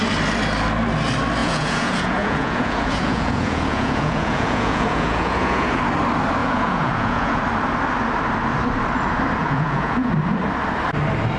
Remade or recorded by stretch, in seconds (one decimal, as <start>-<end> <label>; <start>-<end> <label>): 0.0-1.4 recorded; 1.4-5.8 remade; 5.8-6.4 recorded; 6.4-7.4 remade; 7.4-9.4 recorded; 9.4-10.1 remade; 10.1-11.4 recorded